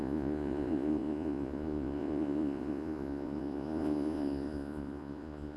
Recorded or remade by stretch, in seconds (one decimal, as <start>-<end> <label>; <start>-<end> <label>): 0.0-5.6 remade

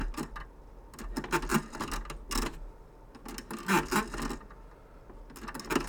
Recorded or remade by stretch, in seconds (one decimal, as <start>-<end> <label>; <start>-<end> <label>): 0.0-5.9 recorded

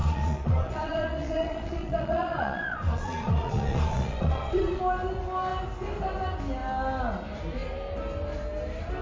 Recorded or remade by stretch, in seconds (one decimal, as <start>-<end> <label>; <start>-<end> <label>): 0.0-4.8 remade; 4.8-9.0 recorded

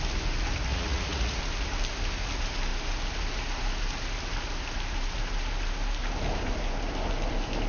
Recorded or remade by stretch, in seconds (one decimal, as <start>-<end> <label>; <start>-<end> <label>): 0.0-0.7 recorded; 0.7-1.4 remade; 1.4-7.7 recorded

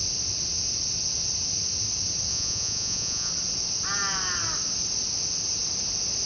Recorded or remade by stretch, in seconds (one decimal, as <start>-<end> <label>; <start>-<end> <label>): 0.0-2.3 recorded; 2.3-3.3 remade; 3.3-6.3 recorded

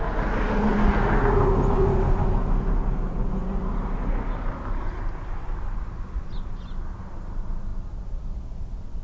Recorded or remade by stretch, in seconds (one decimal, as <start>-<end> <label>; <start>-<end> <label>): 0.0-9.0 recorded

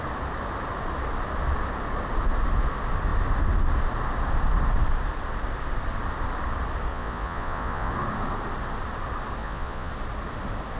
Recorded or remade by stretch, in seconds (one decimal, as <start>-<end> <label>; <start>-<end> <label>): 0.0-6.9 recorded; 6.9-7.9 remade; 7.9-9.4 recorded; 9.4-9.9 remade; 9.9-10.8 recorded

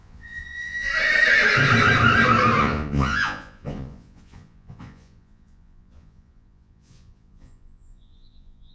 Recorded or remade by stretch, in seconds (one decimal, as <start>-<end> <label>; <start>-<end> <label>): 0.0-0.9 remade; 0.9-2.6 recorded; 2.6-8.7 remade